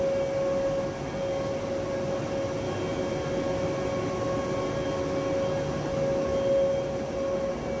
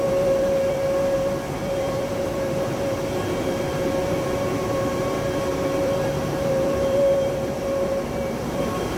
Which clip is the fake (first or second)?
second